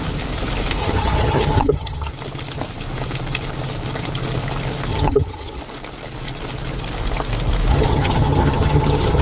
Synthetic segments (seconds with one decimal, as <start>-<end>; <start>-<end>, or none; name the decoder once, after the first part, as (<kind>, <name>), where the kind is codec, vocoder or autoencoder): 0.8-2.1 (vocoder, HiFi-GAN); 4.9-5.6; 7.7-9.2